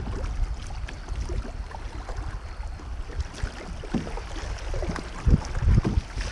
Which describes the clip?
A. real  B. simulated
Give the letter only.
A